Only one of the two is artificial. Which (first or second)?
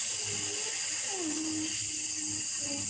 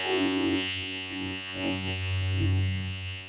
second